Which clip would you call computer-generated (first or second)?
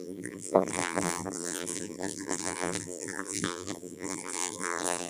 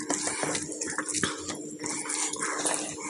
first